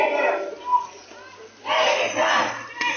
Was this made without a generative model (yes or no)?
yes